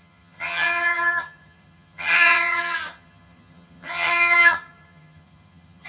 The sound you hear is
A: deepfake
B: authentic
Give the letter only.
A